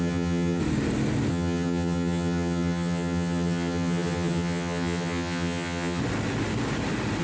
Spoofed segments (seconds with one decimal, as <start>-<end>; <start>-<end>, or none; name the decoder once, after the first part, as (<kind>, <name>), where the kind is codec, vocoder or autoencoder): 0.0-0.6 (vocoder, HiFi-GAN); 1.3-6.0